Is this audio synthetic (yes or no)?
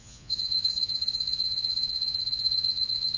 yes